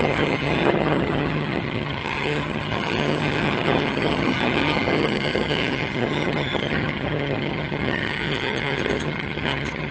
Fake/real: fake